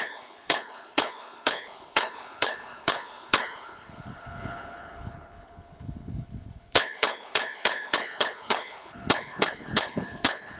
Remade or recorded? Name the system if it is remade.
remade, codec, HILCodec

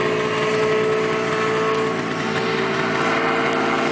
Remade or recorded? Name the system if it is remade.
recorded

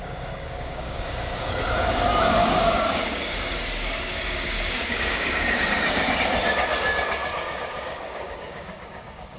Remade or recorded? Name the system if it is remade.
remade, codec, DAC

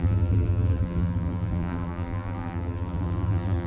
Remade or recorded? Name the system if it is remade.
remade, vocoder, BigVGAN v2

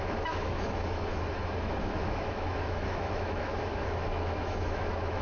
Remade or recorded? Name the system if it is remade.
remade, autoencoder, DAC-VAE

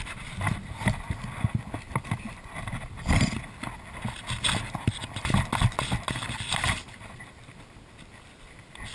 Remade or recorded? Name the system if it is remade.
recorded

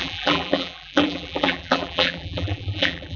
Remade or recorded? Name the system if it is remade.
remade, vocoder, BigVGAN v2